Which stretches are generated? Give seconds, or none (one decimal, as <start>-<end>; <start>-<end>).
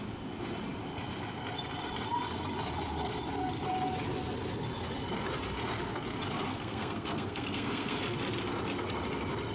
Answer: 6.5-8.0